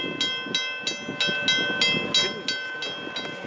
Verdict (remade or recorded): recorded